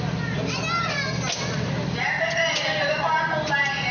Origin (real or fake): real